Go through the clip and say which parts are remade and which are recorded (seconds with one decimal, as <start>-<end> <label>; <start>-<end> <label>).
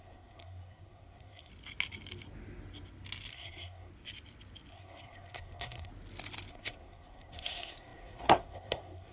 0.0-1.5 remade; 1.5-3.3 recorded; 3.3-3.9 remade; 3.9-4.7 recorded; 4.7-5.9 remade; 5.9-6.5 recorded; 6.5-9.1 remade